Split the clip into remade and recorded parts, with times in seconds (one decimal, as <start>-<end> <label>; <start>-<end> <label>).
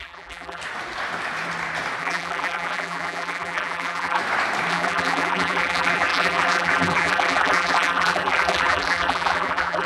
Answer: 0.0-0.6 remade; 0.6-2.0 recorded; 2.0-4.2 remade; 4.2-4.7 recorded; 4.7-9.9 remade